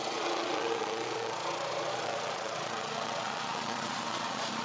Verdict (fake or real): fake